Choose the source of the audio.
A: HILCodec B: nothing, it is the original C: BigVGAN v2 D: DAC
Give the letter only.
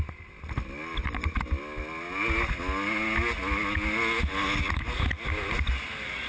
B